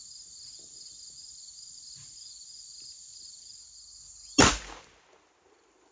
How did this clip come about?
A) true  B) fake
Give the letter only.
A